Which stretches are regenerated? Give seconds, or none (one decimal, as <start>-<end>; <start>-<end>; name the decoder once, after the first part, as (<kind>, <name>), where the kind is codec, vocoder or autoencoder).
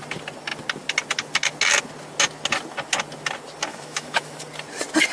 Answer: 3.7-4.4 (autoencoder, DAC-VAE)